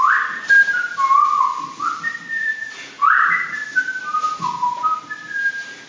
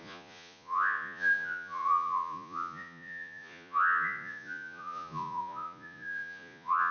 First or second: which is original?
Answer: first